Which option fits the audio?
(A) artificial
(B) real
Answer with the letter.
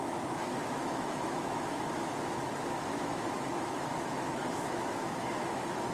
A